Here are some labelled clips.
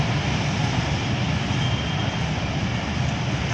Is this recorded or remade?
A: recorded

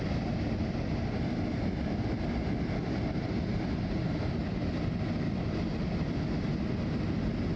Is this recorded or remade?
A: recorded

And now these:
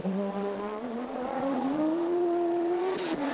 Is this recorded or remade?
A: remade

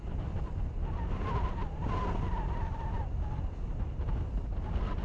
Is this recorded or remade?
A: recorded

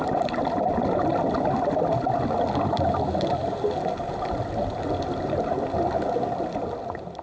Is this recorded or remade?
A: recorded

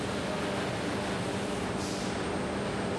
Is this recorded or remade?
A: recorded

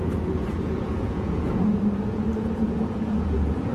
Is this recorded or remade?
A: remade